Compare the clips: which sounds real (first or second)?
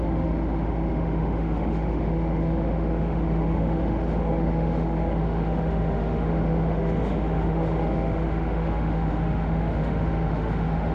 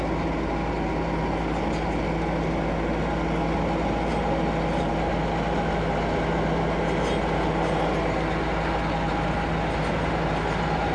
second